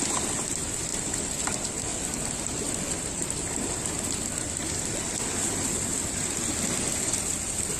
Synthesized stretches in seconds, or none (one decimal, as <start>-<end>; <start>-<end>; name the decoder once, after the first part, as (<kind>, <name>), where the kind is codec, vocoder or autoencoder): 0.0-1.9 (vocoder, BigVGAN v2); 2.4-7.8